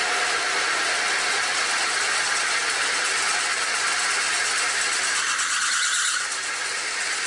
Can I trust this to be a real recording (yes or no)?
yes